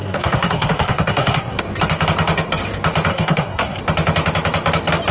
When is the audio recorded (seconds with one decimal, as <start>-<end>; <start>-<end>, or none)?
1.6-3.1; 3.8-5.1